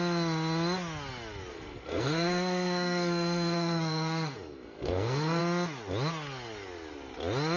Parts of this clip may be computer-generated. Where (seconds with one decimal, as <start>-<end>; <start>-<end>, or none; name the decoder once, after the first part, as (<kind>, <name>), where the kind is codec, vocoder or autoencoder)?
1.5-5.4 (codec, SNAC)